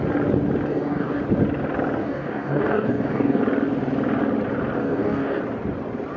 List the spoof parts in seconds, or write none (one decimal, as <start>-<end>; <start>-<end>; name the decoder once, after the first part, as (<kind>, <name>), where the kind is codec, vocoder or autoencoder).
0.7-1.2 (codec, DAC); 2.0-3.4; 4.8-5.4